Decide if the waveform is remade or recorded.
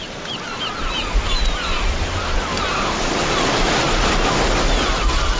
recorded